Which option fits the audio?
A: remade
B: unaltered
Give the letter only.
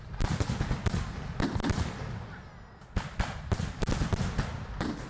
B